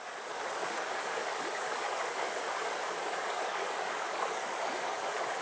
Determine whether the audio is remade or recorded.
remade